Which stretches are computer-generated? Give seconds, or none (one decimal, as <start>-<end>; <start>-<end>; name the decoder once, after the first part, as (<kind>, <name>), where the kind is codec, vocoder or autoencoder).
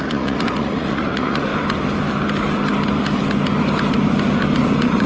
0.0-1.5 (vocoder, Vocos); 4.6-5.1